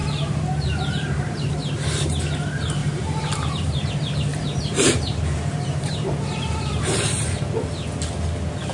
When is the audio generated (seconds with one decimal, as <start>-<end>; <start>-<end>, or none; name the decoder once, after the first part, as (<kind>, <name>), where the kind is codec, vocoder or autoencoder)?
0.0-1.5 (vocoder, BigVGAN v2); 2.8-3.9; 4.3-7.4